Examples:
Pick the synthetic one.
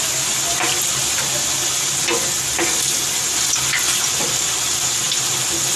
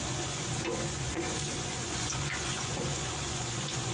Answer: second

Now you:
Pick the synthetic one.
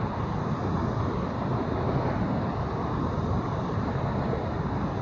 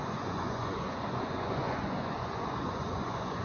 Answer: second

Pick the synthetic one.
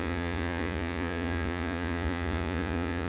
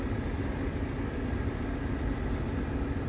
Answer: first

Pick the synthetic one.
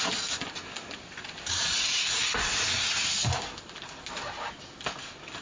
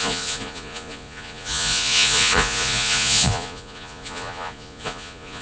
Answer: second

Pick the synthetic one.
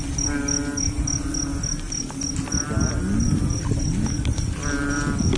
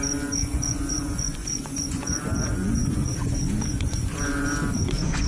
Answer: second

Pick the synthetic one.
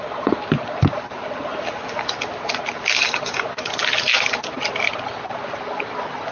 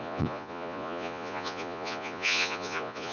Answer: second